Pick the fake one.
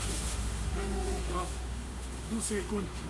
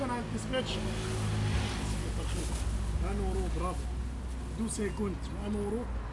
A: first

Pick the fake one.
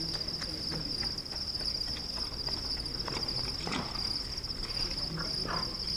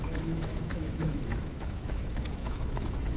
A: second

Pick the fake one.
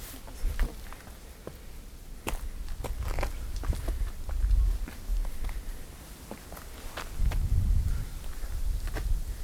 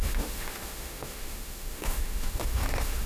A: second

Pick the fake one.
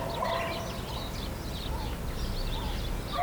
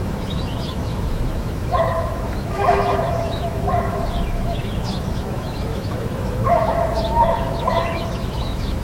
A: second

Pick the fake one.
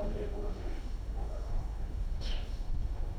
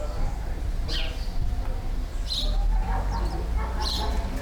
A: first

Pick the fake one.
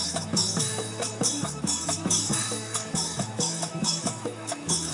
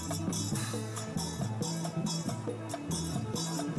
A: first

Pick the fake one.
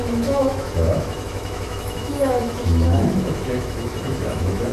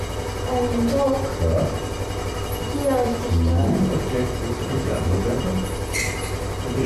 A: first